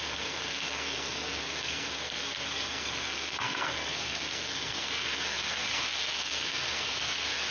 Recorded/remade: remade